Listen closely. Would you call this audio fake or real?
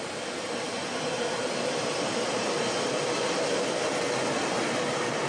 real